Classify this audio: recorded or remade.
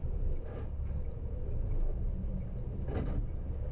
recorded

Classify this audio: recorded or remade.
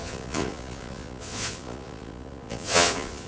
remade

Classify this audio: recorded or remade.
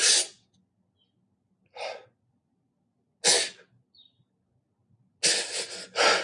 recorded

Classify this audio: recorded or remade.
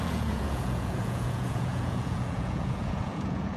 remade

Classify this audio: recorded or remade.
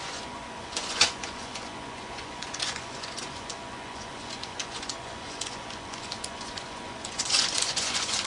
remade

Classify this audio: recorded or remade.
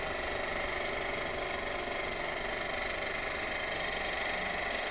recorded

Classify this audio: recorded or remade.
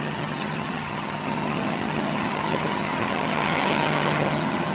remade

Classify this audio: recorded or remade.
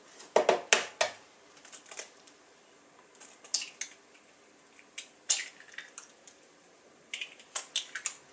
recorded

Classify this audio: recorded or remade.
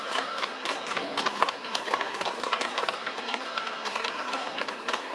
remade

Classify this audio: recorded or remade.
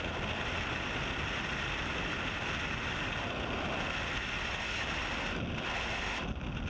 recorded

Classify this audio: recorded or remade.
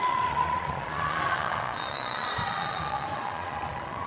remade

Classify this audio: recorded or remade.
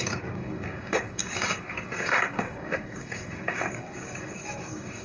remade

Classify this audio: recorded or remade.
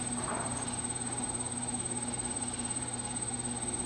recorded